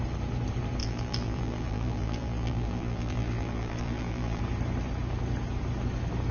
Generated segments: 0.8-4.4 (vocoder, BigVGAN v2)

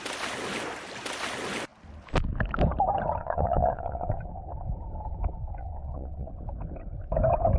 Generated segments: 3.2-4.2 (vocoder, WaveNeXt); 5.6-6.3